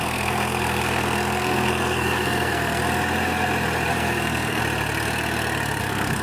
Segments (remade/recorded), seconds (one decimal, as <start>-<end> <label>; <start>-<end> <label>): 0.0-2.8 remade; 2.8-3.9 recorded; 3.9-4.6 remade; 4.6-5.8 recorded; 5.8-6.2 remade